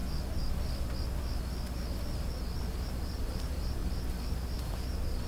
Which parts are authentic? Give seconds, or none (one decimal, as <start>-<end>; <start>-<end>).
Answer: 0.0-2.9; 3.8-4.6